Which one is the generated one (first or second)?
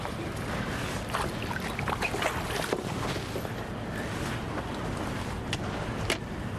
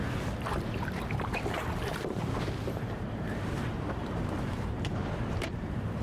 second